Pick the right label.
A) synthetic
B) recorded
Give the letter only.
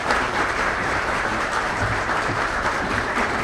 A